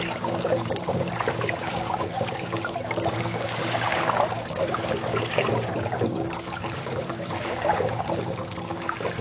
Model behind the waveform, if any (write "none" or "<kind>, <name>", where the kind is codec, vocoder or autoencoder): codec, DAC